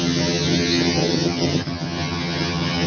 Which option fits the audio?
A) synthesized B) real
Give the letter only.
A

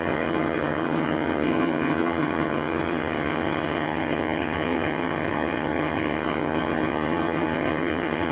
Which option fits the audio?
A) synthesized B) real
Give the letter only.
A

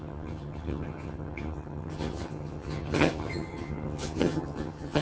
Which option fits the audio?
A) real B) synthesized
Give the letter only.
B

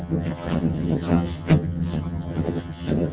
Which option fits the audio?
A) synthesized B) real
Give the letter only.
A